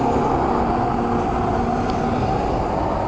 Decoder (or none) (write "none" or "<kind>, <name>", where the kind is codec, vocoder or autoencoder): none